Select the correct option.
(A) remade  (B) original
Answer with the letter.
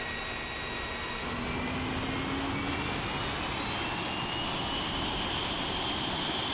B